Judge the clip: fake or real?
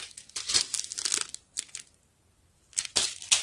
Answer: real